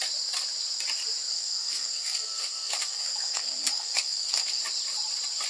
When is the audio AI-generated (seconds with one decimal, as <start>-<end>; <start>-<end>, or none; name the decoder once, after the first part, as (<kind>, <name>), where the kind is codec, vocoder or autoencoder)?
1.3-4.6 (codec, SNAC)